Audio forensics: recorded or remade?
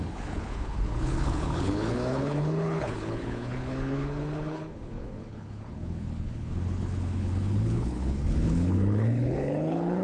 remade